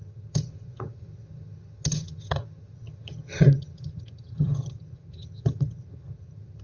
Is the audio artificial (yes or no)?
yes